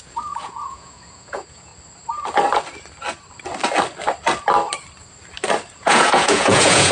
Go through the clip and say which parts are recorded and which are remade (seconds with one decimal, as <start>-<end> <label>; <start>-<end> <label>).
0.0-1.7 remade; 1.7-5.8 recorded; 5.8-6.9 remade